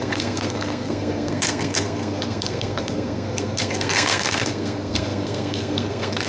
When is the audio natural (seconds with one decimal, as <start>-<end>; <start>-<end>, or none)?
none